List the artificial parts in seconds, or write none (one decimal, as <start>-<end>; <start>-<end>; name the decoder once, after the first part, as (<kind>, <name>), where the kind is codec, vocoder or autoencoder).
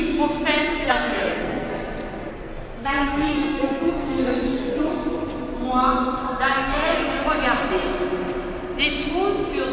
0.7-1.7 (codec, SNAC); 2.3-4.9; 6.6-7.1